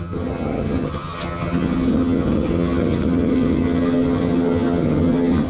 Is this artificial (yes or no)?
yes